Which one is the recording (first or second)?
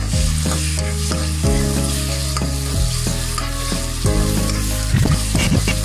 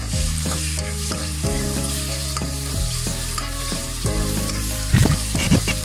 first